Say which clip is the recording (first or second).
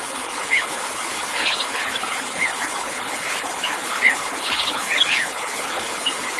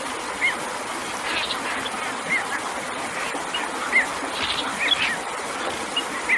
second